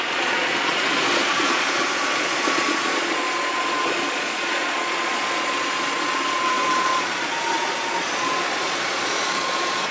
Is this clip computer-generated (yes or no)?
yes